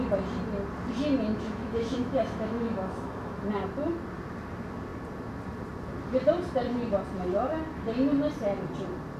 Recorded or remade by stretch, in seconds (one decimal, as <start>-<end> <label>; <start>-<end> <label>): 0.0-1.3 recorded; 1.3-3.5 remade; 3.5-9.2 recorded